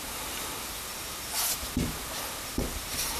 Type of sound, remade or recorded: recorded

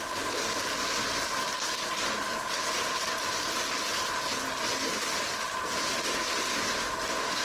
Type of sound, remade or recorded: recorded